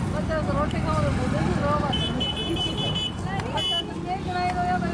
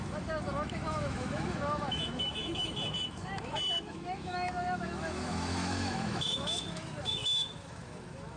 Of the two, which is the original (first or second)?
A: first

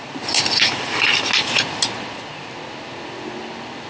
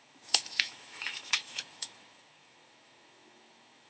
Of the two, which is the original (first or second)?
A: first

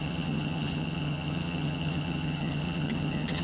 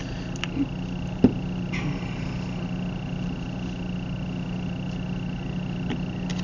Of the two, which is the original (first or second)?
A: second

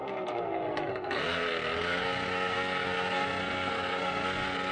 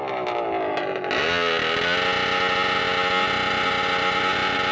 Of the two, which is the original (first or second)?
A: second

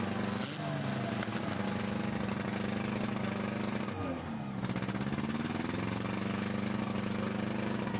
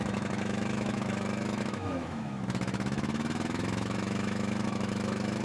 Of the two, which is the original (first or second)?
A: first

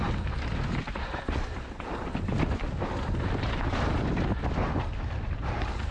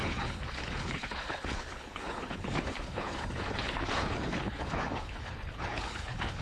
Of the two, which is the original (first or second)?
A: first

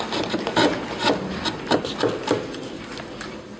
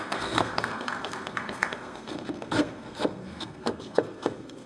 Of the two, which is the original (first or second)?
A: first